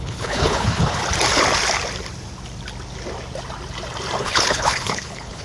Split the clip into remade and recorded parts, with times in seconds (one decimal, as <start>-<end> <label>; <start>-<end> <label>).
0.0-1.0 remade; 1.0-4.2 recorded; 4.2-5.4 remade